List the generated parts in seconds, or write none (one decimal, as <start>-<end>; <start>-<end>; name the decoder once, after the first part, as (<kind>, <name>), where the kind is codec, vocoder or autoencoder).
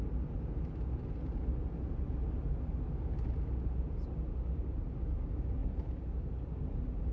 none